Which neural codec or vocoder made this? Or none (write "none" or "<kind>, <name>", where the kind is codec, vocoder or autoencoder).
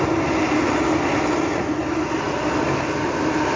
none